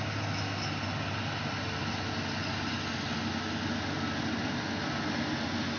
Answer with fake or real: real